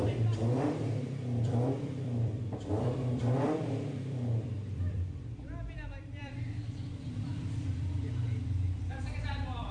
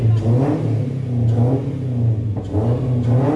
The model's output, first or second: first